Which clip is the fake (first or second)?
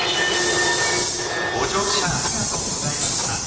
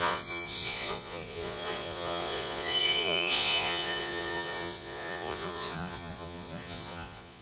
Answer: second